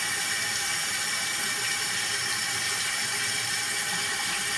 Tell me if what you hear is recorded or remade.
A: recorded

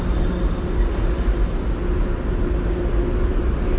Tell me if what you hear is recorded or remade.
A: recorded